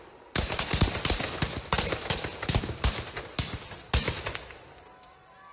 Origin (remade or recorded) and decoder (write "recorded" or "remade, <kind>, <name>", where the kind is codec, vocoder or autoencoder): recorded